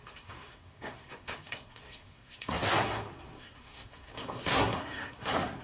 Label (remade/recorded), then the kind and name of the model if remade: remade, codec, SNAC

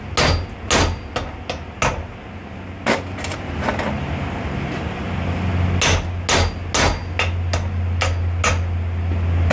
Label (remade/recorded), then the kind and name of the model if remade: recorded